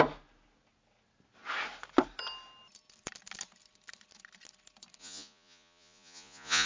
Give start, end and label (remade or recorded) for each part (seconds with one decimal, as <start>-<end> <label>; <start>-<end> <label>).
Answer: 0.0-5.0 recorded; 5.0-6.7 remade

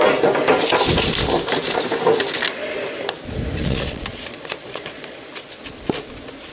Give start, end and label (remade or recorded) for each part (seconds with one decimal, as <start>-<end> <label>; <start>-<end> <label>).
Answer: 0.0-3.6 recorded; 3.6-5.3 remade; 5.3-6.5 recorded

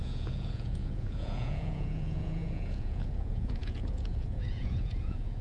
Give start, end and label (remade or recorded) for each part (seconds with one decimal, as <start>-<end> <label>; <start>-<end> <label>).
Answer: 0.0-5.4 remade

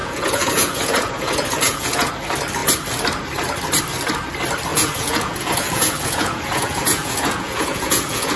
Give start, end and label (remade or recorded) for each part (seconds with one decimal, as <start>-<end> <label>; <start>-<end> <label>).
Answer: 0.0-2.1 remade; 2.1-4.7 recorded; 4.7-8.4 remade

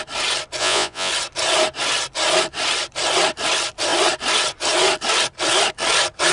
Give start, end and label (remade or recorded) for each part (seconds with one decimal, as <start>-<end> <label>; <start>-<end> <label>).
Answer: 0.0-0.6 recorded; 0.6-1.1 remade; 1.1-6.3 recorded

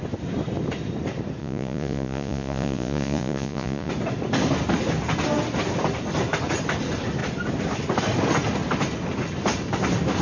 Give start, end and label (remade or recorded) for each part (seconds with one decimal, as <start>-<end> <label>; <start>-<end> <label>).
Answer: 0.0-1.4 recorded; 1.4-3.9 remade; 3.9-10.2 recorded